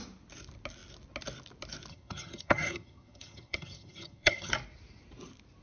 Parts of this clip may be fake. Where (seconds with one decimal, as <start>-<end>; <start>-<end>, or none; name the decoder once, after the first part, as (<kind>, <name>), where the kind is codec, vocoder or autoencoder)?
1.9-4.5 (vocoder, HiFi-GAN)